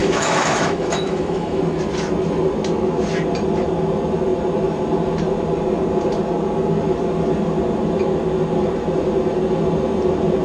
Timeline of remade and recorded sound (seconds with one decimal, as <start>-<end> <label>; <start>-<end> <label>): 0.0-1.6 remade; 1.6-10.4 recorded